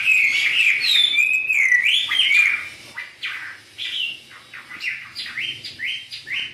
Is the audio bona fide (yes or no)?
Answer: yes